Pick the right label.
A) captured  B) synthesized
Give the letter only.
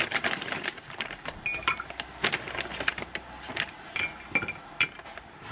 A